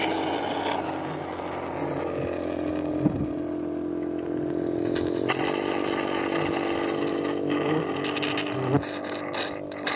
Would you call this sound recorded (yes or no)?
yes